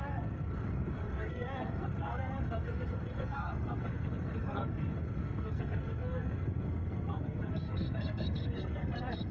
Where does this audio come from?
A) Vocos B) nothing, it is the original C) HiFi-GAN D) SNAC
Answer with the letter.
D